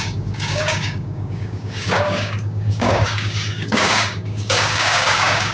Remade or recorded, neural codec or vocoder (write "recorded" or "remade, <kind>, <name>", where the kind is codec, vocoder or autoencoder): remade, codec, DAC